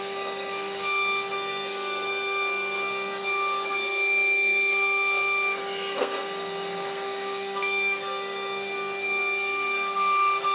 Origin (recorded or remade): remade